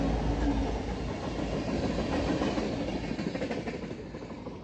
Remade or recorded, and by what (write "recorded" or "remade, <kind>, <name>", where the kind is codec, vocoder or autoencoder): recorded